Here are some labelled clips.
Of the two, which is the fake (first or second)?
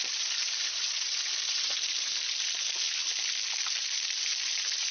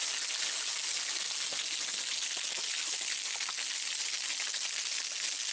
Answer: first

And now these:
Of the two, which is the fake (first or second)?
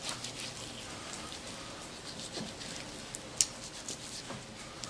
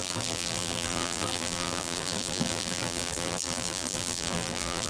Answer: second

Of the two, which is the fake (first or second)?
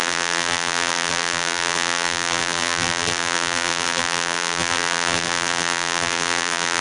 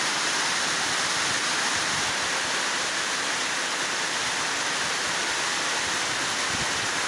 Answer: first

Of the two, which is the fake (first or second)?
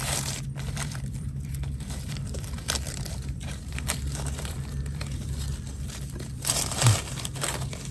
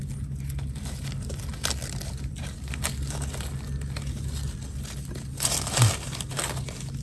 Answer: first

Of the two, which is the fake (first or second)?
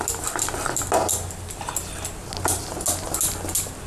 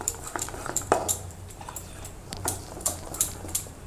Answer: second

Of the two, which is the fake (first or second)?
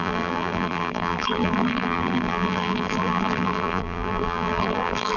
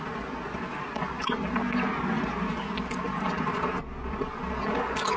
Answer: first